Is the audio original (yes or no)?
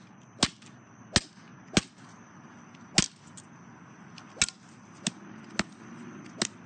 yes